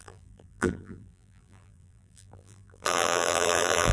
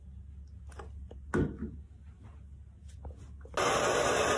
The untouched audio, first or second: second